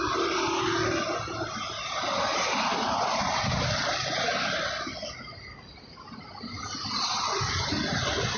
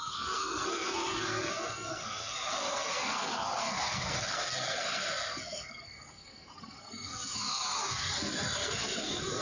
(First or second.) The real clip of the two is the first